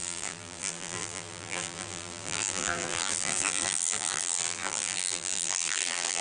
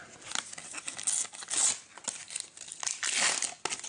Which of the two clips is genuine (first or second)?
second